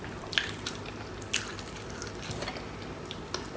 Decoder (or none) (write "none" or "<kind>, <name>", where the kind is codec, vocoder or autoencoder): none